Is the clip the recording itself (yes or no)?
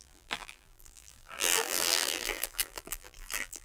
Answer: no